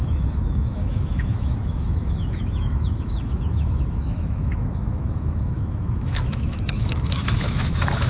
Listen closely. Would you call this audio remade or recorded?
remade